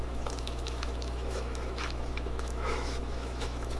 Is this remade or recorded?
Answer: remade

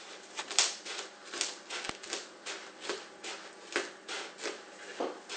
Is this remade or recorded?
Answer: recorded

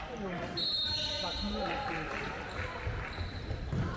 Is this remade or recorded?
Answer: recorded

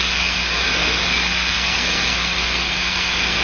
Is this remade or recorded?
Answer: remade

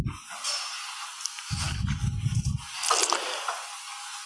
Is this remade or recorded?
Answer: recorded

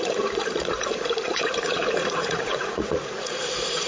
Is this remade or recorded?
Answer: remade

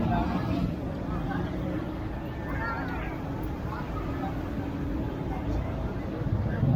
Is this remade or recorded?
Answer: recorded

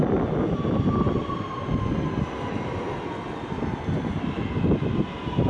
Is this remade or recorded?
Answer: recorded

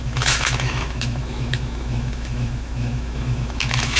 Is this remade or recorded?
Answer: remade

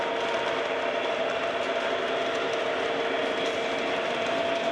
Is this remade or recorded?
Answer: recorded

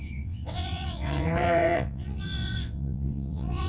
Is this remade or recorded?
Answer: remade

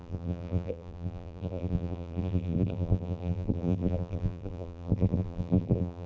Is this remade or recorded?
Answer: remade